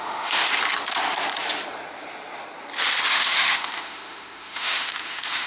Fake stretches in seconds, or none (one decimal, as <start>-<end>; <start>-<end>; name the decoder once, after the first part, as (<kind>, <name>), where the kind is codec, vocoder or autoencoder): 0.0-0.4 (autoencoder, DAC-VAE); 3.1-5.5